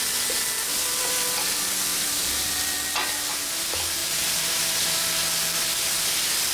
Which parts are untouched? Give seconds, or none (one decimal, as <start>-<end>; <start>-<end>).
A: 0.0-1.9; 2.5-4.0; 4.6-6.5